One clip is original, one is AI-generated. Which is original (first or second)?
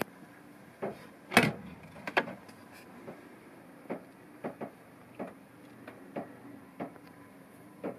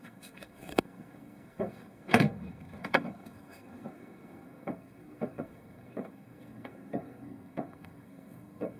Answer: first